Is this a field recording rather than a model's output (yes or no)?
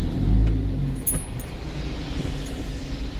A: yes